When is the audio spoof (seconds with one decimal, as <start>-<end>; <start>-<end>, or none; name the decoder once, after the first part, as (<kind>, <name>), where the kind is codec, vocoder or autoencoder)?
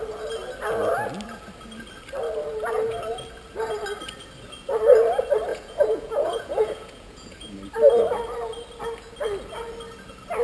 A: 5.5-7.5 (vocoder, Vocos)